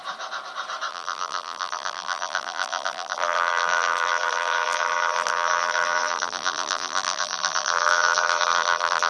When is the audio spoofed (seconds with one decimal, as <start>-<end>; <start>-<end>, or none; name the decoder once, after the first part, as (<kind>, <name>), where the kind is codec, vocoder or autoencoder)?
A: 0.9-9.1 (vocoder, BigVGAN v2)